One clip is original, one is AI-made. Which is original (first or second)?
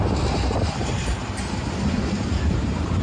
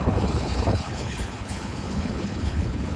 first